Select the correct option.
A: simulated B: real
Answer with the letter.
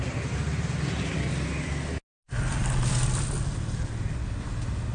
B